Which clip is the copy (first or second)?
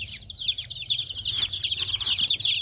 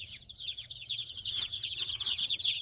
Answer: second